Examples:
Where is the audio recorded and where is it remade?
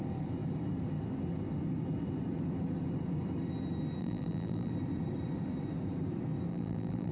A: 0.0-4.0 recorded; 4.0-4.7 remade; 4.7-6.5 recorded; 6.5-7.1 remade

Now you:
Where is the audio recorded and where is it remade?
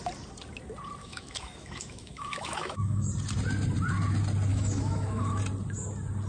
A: 0.0-1.0 recorded; 1.0-3.1 remade; 3.1-4.5 recorded; 4.5-5.4 remade; 5.4-6.3 recorded